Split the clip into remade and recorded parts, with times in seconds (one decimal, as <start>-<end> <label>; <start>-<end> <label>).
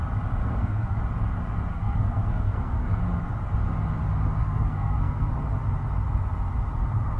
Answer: 0.0-0.4 recorded; 0.4-1.0 remade; 1.0-1.7 recorded; 1.7-3.0 remade; 3.0-4.4 recorded; 4.4-5.3 remade; 5.3-7.2 recorded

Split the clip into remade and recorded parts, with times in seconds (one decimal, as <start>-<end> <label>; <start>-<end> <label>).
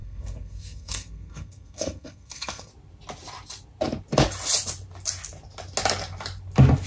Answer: 0.0-2.7 remade; 2.7-6.9 recorded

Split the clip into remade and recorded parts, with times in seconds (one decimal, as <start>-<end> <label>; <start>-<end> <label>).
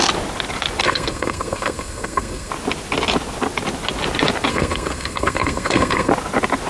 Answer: 0.0-0.8 recorded; 0.8-2.5 remade; 2.5-4.5 recorded; 4.5-6.1 remade; 6.1-6.7 recorded